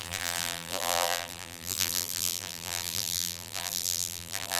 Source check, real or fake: fake